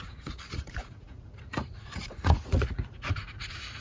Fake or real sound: fake